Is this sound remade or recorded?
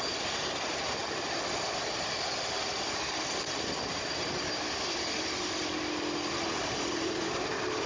recorded